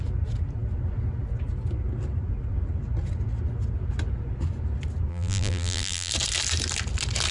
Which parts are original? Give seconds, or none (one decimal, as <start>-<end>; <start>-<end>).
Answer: 0.0-5.1; 6.1-7.3